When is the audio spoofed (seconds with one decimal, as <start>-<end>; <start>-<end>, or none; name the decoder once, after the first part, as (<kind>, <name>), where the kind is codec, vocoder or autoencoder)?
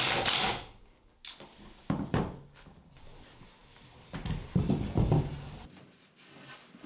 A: 3.6-5.7 (vocoder, BigVGAN v2)